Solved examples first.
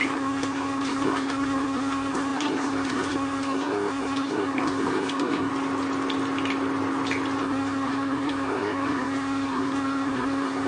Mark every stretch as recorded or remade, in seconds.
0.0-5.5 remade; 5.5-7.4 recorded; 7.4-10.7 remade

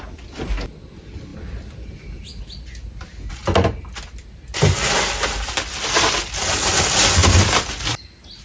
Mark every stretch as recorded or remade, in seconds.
0.0-8.4 recorded

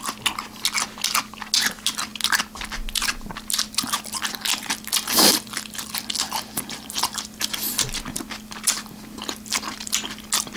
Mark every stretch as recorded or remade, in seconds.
0.0-10.6 recorded

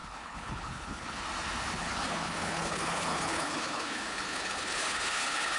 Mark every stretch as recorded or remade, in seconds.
0.0-1.2 remade; 1.2-1.8 recorded; 1.8-5.6 remade

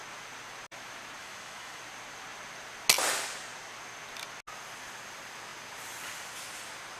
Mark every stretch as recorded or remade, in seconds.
0.0-1.2 recorded; 1.2-1.8 remade; 1.8-7.0 recorded